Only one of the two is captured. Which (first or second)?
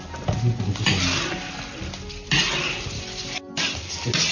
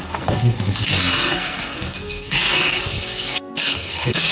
first